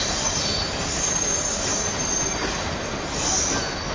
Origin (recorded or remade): recorded